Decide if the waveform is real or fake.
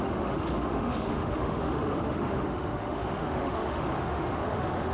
fake